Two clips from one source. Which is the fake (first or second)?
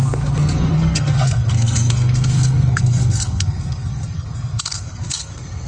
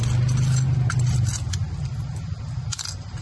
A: first